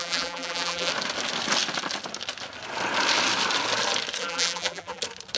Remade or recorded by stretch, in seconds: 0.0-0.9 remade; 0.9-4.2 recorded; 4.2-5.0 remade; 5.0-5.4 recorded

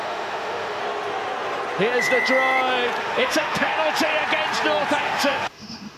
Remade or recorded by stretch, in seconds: 0.0-0.8 remade; 0.8-3.0 recorded; 3.0-3.7 remade; 3.7-5.0 recorded; 5.0-6.0 remade

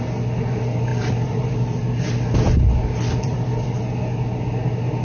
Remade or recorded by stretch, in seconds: 0.0-0.9 recorded; 0.9-3.8 remade; 3.8-5.0 recorded

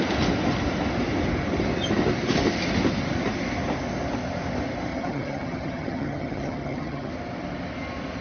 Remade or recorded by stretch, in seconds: 0.0-4.9 recorded; 4.9-7.1 remade; 7.1-8.2 recorded

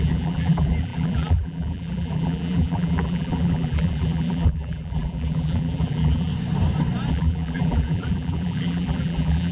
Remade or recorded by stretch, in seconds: 0.0-6.3 remade; 6.3-7.1 recorded; 7.1-9.5 remade

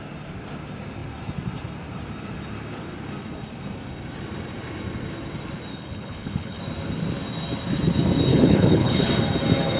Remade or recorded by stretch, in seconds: 0.0-5.7 recorded; 5.7-6.6 remade; 6.6-8.3 recorded; 8.3-9.1 remade; 9.1-9.8 recorded

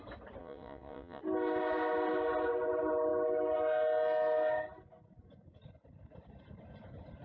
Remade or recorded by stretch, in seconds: 0.0-0.4 recorded; 0.4-1.2 remade; 1.2-7.2 recorded